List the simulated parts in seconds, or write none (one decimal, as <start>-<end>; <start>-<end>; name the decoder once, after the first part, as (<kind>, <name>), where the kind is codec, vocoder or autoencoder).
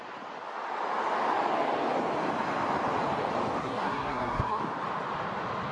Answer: 3.6-4.6 (codec, SNAC)